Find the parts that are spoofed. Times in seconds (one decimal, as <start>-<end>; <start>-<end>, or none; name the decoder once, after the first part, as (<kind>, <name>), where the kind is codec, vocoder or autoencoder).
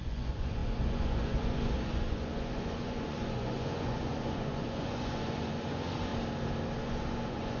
0.0-6.1 (vocoder, Vocos); 6.8-7.6